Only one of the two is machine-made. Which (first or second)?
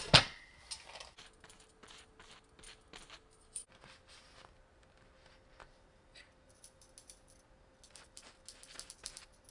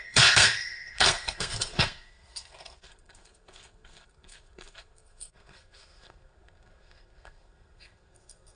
second